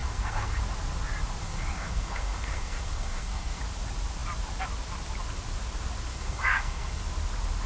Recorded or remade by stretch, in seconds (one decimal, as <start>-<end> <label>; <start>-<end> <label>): 0.0-0.6 remade; 0.6-1.4 recorded; 1.4-3.6 remade; 3.6-6.1 recorded; 6.1-7.0 remade; 7.0-7.7 recorded